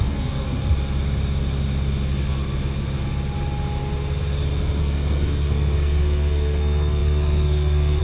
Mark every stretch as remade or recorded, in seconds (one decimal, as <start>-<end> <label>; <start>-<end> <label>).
0.0-0.5 remade; 0.5-4.8 recorded; 4.8-8.0 remade